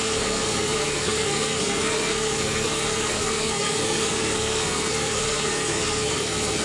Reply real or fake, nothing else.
fake